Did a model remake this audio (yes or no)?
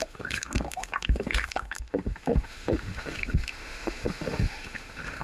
yes